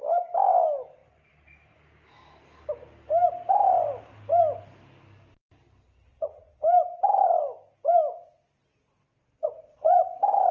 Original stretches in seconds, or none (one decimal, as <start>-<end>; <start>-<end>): 0.0-6.1; 6.6-9.4; 10.0-10.5